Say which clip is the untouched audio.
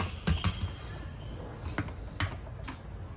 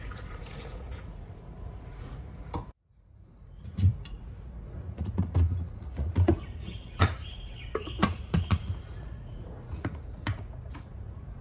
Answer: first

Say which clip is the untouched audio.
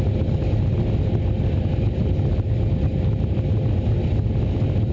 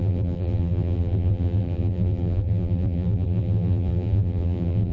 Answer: first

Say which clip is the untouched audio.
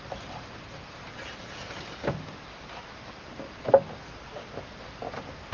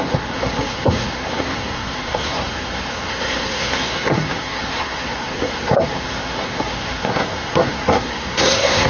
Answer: first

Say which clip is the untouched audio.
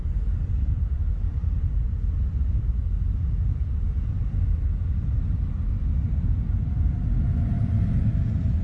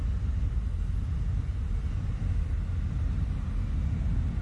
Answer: second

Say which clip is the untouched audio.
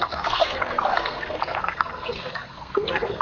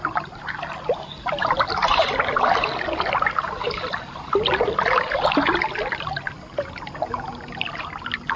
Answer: second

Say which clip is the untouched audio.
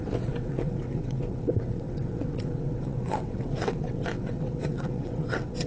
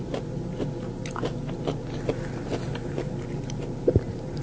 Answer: second